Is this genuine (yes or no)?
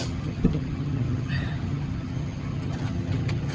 no